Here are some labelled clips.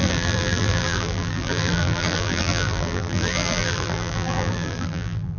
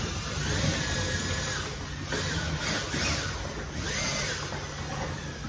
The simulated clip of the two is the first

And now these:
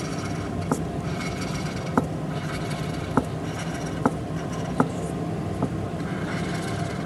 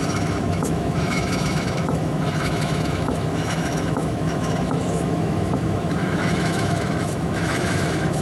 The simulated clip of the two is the second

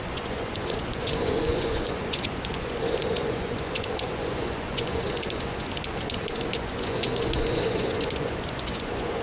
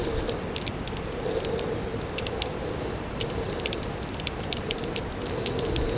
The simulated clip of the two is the first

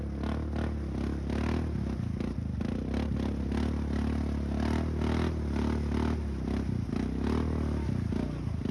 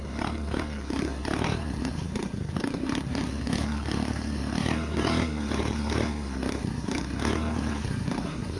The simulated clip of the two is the second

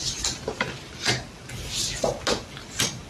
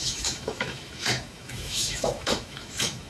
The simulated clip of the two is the second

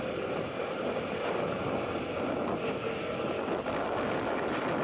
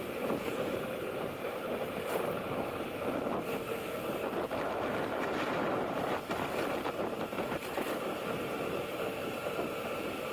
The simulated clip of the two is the second